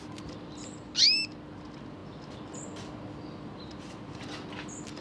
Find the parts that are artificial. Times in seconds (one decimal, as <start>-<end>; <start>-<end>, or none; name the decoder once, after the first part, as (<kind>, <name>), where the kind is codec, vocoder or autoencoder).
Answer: none